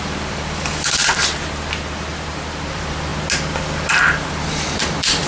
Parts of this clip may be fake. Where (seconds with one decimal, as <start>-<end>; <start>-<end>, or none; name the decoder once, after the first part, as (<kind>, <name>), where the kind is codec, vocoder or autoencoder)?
0.0-1.0 (vocoder, BigVGAN v2); 2.7-3.1; 4.0-5.3